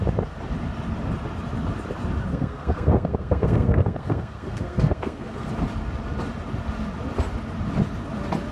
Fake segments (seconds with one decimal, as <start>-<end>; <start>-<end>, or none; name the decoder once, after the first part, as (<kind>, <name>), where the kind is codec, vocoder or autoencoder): 2.3-5.5 (codec, SNAC)